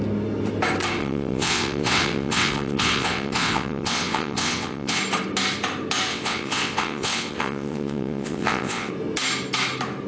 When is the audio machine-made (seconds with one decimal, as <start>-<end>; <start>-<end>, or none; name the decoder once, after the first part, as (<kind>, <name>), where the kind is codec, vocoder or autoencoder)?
1.0-5.0 (vocoder, WaveNeXt); 6.1-8.9